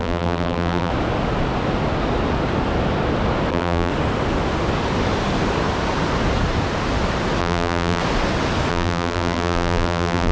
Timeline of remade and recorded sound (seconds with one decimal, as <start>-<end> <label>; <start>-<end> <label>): 0.0-0.9 remade; 0.9-3.5 recorded; 3.5-3.9 remade; 3.9-7.4 recorded; 7.4-8.0 remade; 8.0-8.7 recorded; 8.7-10.3 remade

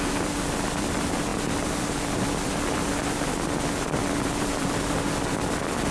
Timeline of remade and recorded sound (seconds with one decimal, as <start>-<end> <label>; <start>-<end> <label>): 0.0-5.9 remade

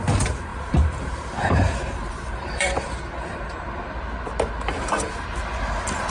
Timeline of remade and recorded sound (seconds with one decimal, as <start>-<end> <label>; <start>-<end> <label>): 0.0-0.5 recorded; 0.5-3.2 remade; 3.2-6.1 recorded

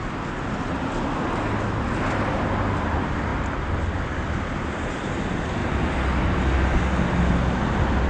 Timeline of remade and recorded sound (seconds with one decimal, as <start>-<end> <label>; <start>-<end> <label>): 0.0-8.1 recorded